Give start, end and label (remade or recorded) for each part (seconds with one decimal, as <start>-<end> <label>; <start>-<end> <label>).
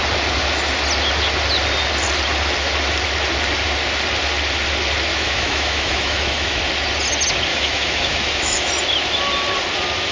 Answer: 0.0-5.1 recorded; 5.1-6.6 remade; 6.6-7.5 recorded; 7.5-8.7 remade; 8.7-10.1 recorded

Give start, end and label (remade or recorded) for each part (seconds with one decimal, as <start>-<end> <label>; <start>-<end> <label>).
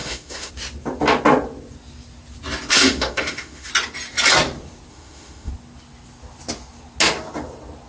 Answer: 0.0-0.5 remade; 0.5-2.7 recorded; 2.7-3.7 remade; 3.7-4.9 recorded; 4.9-5.5 remade; 5.5-7.9 recorded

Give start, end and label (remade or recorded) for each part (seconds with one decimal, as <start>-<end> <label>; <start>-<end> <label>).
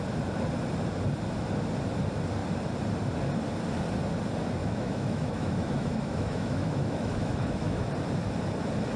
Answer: 0.0-4.6 recorded; 4.6-7.9 remade; 7.9-9.0 recorded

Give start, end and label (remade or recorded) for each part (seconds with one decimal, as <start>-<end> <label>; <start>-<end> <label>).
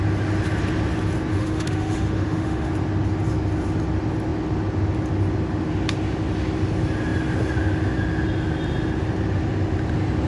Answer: 0.0-1.3 recorded; 1.3-2.7 remade; 2.7-10.3 recorded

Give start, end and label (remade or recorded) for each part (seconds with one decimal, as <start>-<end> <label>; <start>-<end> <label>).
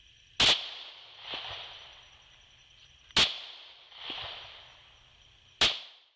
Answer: 0.0-6.2 recorded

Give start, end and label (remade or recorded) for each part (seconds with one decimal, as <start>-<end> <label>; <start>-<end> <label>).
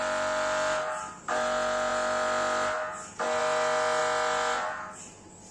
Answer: 0.0-5.5 recorded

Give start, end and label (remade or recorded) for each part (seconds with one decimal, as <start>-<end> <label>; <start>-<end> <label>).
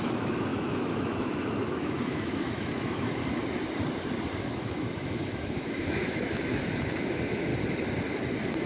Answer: 0.0-3.2 remade; 3.2-4.4 recorded; 4.4-7.5 remade; 7.5-8.7 recorded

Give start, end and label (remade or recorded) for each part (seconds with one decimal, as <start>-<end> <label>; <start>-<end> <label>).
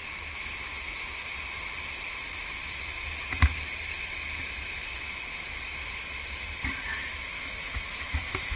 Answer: 0.0-2.6 recorded; 2.6-5.9 remade; 5.9-6.9 recorded; 6.9-8.6 remade